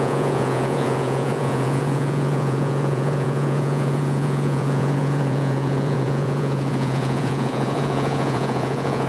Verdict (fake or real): fake